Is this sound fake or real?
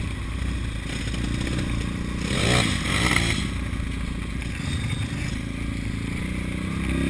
real